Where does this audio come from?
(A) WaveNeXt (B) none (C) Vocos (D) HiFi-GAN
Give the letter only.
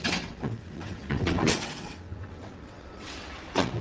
A